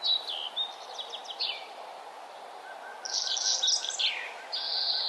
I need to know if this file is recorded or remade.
recorded